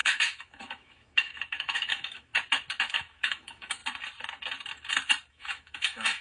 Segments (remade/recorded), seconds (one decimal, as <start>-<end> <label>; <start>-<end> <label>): 0.0-2.3 remade; 2.3-2.8 recorded; 2.8-3.8 remade; 3.8-5.3 recorded; 5.3-6.2 remade